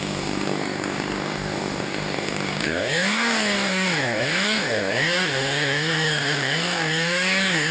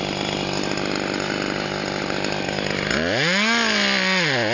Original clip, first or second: second